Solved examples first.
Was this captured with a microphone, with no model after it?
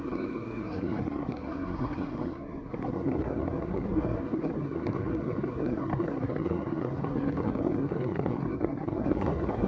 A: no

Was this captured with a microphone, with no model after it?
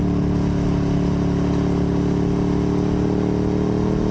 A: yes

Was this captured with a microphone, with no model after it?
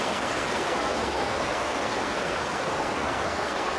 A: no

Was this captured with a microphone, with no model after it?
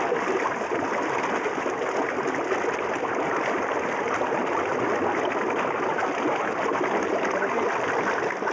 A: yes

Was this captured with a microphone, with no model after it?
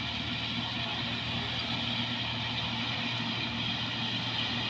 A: yes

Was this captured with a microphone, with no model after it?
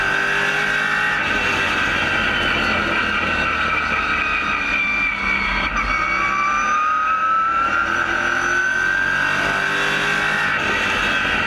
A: yes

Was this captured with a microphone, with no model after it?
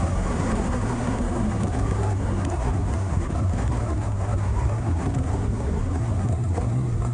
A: no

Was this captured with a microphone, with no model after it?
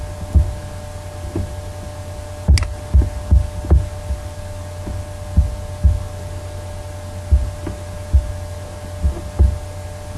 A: yes